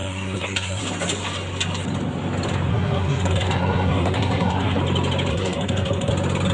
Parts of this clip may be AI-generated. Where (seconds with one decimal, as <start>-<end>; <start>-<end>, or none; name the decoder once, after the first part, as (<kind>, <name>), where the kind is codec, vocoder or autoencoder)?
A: 0.0-0.8 (codec, SNAC); 2.7-4.8; 5.3-6.1